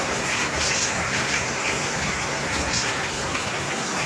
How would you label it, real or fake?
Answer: fake